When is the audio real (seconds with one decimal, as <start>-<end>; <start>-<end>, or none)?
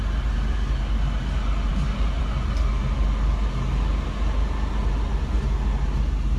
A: 0.0-6.4